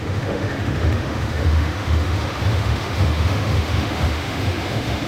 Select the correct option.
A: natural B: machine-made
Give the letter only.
B